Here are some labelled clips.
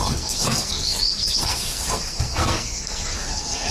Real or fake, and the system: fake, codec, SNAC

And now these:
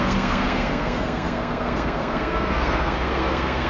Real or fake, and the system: fake, codec, SNAC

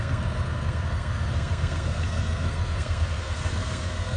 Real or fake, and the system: fake, codec, SNAC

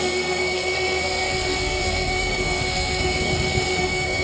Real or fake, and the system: fake, codec, SNAC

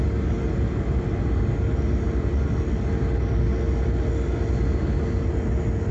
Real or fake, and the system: real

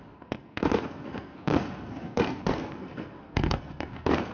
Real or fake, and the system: fake, codec, SNAC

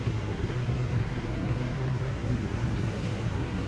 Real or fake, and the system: fake, codec, SNAC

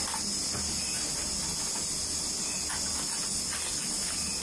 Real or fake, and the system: real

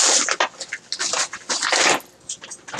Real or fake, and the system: real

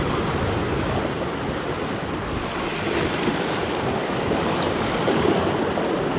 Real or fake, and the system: real